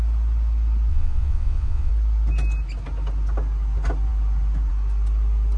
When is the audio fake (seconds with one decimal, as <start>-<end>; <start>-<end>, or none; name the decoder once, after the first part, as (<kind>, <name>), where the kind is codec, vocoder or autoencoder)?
0.9-1.9 (vocoder, WaveNeXt)